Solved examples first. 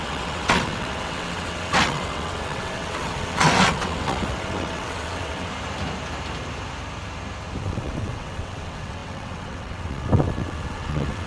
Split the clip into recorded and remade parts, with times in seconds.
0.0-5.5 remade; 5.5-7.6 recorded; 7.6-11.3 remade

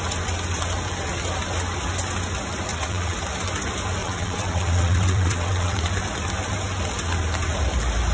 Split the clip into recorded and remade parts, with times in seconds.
0.0-2.7 recorded; 2.7-3.2 remade; 3.2-4.0 recorded; 4.0-5.9 remade; 5.9-8.1 recorded

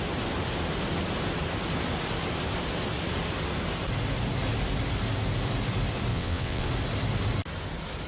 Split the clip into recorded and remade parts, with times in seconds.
0.0-6.1 recorded; 6.1-6.7 remade; 6.7-8.1 recorded

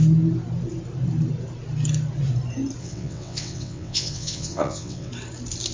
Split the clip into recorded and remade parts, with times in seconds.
0.0-2.8 recorded; 2.8-5.1 remade; 5.1-5.7 recorded